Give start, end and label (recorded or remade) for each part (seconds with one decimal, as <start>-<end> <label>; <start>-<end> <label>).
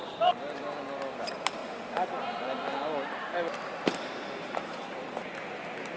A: 0.0-6.0 recorded